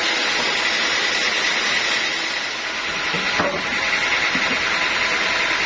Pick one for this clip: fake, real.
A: real